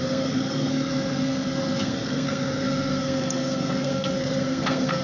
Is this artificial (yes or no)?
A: yes